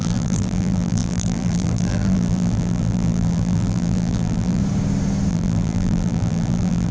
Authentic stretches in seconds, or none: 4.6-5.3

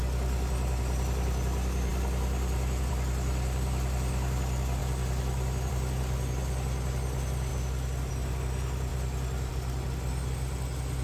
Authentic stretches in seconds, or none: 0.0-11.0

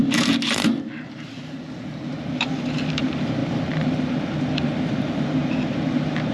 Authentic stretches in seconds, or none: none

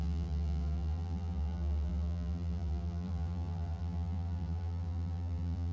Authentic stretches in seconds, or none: none

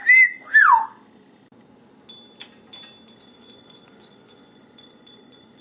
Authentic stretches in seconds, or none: 0.0-3.2

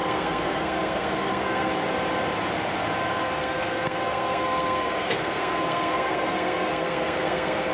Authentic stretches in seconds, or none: 1.7-3.2